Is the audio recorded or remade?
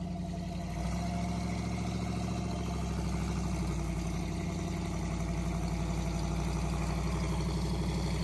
recorded